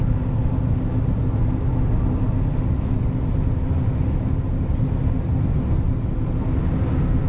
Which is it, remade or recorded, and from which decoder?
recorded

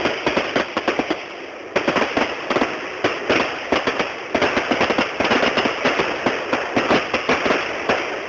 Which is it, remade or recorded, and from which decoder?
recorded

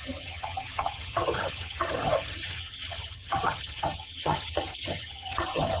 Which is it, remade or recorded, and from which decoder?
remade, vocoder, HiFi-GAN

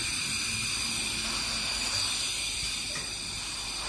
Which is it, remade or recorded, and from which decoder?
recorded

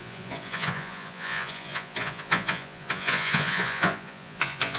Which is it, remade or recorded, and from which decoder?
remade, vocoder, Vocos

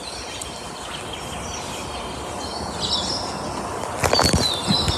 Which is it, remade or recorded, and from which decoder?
recorded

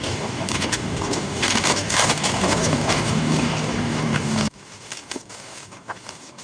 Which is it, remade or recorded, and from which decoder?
remade, codec, DAC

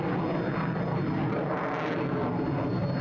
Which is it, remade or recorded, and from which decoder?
recorded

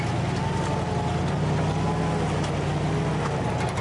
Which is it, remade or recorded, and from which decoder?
recorded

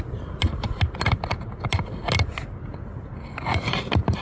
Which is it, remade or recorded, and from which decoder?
recorded